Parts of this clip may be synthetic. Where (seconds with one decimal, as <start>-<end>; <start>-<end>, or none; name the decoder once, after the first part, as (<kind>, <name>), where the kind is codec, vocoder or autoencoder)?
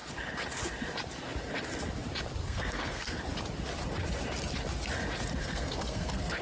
2.4-3.2 (codec, SNAC); 5.4-6.4